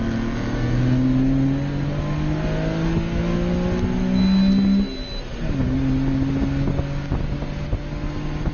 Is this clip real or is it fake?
real